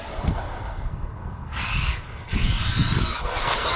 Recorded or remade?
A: remade